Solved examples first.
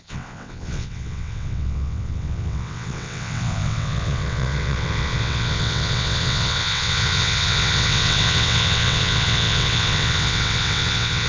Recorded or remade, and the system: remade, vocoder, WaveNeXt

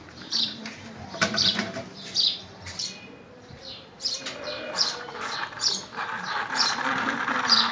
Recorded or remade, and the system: remade, vocoder, BigVGAN v2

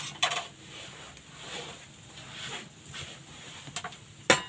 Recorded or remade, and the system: recorded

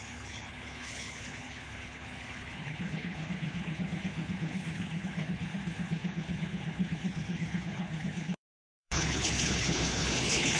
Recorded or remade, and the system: remade, codec, HILCodec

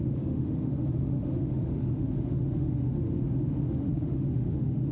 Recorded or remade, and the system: remade, autoencoder, DAC-VAE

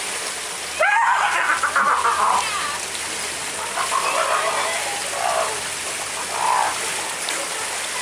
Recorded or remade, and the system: recorded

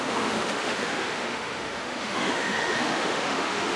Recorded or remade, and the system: remade, autoencoder, DAC-VAE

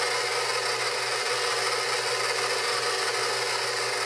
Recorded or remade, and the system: recorded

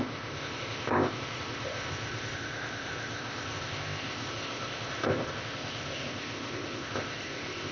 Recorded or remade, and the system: remade, codec, ZipCodec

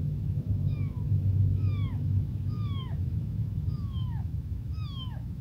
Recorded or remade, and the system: remade, autoencoder, DAC-VAE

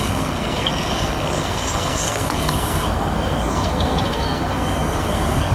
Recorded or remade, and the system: remade, codec, SNAC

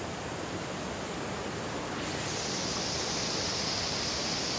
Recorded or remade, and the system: recorded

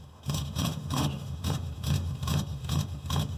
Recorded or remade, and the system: remade, autoencoder, DAC-VAE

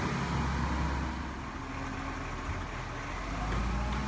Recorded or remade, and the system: recorded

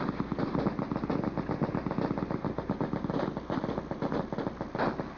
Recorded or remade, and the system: recorded